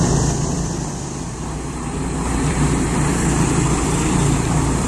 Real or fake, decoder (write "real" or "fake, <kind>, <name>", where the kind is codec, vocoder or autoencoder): fake, vocoder, BigVGAN v2